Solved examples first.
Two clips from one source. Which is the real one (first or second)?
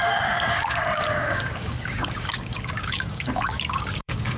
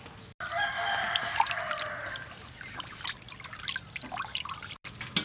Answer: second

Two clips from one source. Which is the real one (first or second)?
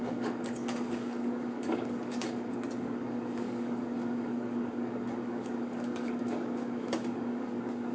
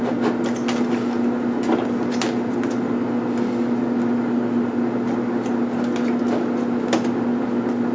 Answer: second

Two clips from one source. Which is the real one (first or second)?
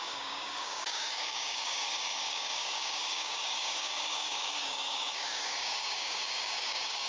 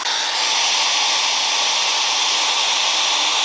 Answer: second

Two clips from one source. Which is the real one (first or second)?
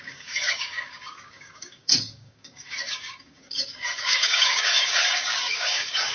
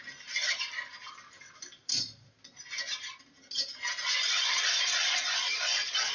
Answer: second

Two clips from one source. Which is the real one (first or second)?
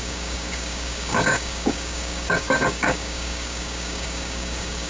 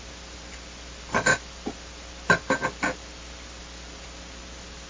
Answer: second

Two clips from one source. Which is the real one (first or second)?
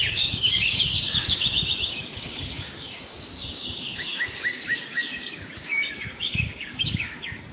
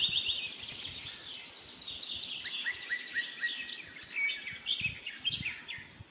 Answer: second